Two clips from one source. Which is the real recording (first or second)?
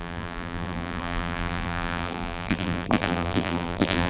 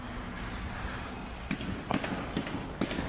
second